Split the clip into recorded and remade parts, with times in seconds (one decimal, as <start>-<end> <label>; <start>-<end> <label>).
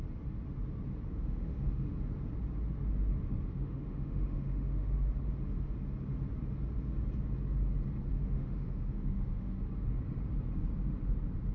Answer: 0.0-1.1 recorded; 1.1-1.9 remade; 1.9-3.5 recorded; 3.5-5.1 remade; 5.1-8.1 recorded; 8.1-9.6 remade; 9.6-11.5 recorded